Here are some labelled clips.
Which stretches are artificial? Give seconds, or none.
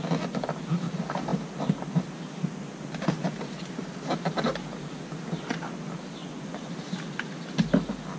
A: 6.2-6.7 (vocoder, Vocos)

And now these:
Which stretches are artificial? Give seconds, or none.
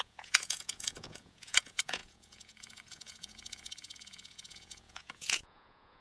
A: 0.0-6.0 (vocoder, Vocos)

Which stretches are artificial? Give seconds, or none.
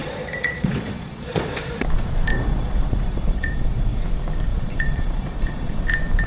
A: 0.0-1.7 (vocoder, Vocos); 2.3-4.0; 4.5-5.8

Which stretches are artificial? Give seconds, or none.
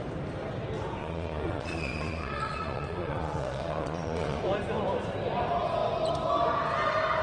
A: 1.0-4.4 (vocoder, Vocos)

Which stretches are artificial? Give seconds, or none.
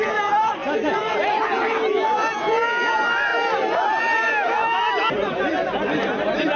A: 2.2-2.8 (vocoder, Vocos)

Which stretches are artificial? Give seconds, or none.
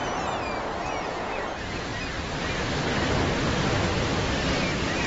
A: 0.6-1.9 (vocoder, Vocos)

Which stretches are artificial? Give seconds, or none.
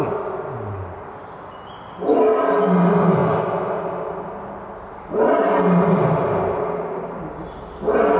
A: none